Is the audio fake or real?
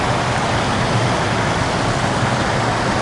real